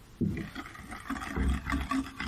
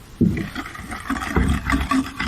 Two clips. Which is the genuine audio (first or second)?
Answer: first